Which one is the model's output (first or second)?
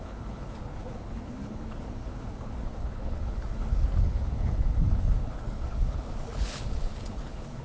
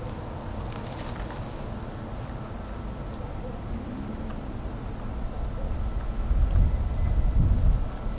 first